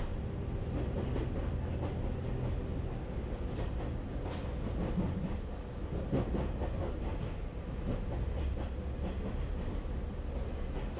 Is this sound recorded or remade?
recorded